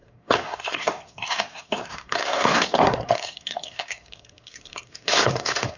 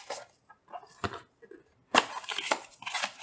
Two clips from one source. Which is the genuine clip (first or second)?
second